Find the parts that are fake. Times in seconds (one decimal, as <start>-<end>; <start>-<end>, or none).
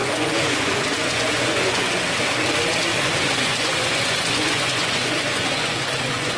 0.0-2.0; 2.9-6.4